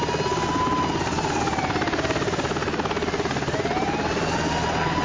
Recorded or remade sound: recorded